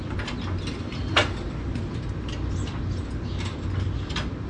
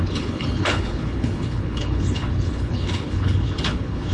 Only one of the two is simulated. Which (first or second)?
second